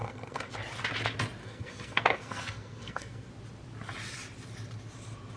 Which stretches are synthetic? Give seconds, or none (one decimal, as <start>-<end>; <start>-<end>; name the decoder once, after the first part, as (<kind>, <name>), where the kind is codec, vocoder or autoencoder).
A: 0.0-0.5 (codec, SNAC); 1.4-3.3